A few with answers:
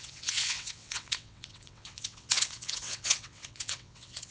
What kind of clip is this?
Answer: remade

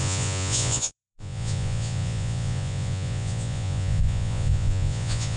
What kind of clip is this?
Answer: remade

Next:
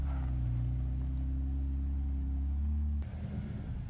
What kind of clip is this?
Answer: recorded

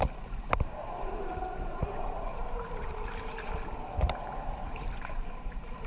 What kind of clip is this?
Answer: remade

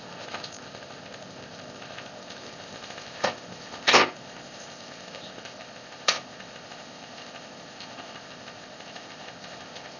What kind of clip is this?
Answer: remade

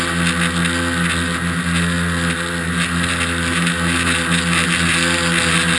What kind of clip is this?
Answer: recorded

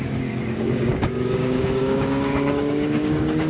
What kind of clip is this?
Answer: remade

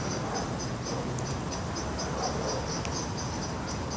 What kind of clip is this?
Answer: recorded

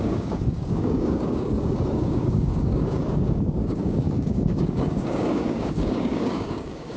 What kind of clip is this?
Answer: remade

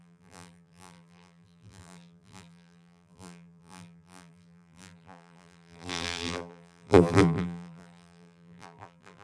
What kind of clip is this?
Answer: remade